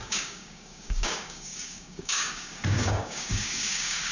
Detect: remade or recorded remade